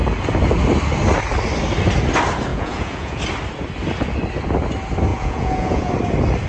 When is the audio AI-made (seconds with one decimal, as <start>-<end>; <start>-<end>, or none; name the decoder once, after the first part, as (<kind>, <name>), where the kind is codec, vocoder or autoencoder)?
2.5-3.2 (vocoder, Vocos); 5.1-5.9

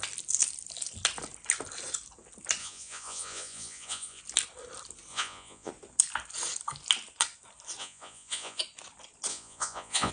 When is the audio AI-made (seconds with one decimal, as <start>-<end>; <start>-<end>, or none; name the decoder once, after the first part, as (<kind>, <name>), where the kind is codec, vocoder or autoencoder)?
2.6-4.2 (vocoder, Vocos); 5.1-5.7; 7.8-8.6; 9.3-10.1

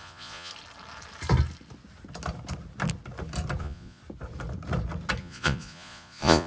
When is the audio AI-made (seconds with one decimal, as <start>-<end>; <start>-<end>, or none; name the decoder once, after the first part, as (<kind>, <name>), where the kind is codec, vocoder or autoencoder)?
0.0-0.5 (vocoder, Vocos); 3.6-4.0; 5.2-6.5

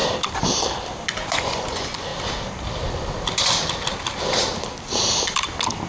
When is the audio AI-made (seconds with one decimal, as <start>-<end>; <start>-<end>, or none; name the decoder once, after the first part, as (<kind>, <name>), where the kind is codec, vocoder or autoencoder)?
1.2-2.1 (vocoder, Vocos)